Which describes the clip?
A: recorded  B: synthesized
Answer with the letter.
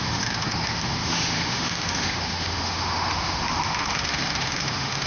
B